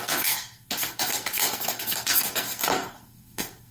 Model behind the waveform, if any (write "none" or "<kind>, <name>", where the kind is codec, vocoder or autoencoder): codec, SNAC